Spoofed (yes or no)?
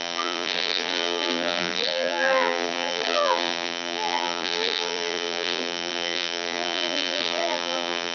yes